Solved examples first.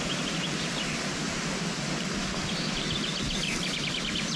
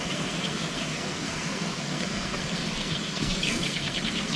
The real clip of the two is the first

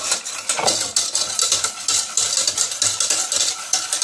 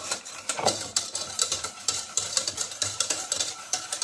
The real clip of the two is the first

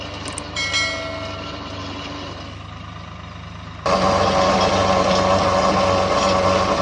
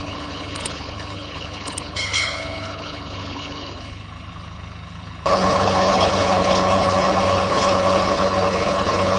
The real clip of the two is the first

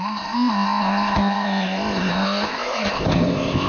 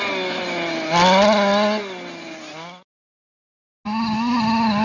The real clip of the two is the second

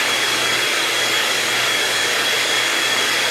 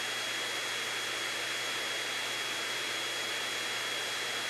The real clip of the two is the second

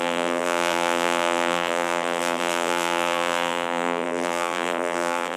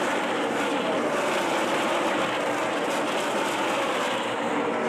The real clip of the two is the second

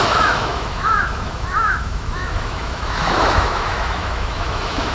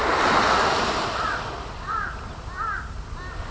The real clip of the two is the second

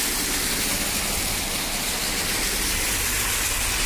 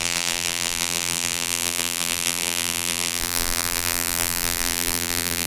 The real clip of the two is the first